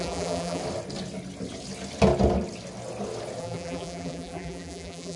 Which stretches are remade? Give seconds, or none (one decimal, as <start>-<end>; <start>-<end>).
0.0-0.6; 3.4-5.2